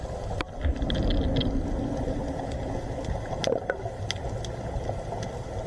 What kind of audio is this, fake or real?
real